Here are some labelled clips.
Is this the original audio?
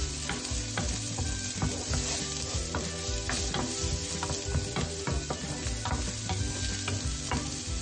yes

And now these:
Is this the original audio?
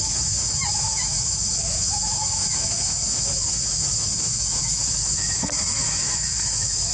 no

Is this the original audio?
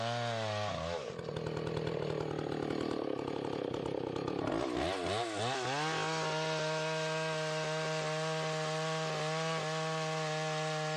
yes